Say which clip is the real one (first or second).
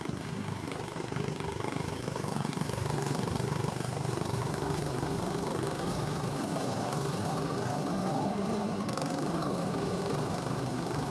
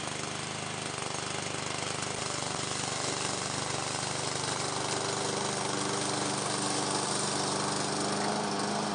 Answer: second